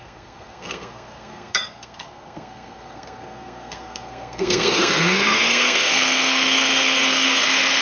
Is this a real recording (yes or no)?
no